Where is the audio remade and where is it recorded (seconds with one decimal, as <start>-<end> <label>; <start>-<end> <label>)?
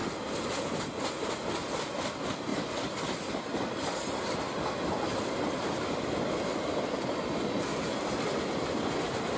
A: 0.0-9.4 recorded